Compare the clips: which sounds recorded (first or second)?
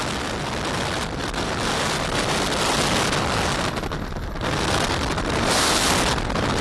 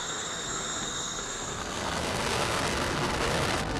first